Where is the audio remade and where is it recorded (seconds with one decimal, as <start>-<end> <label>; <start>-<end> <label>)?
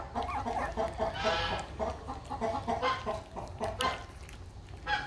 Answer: 0.0-5.1 recorded